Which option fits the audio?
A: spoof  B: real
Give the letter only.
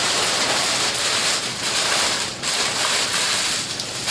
A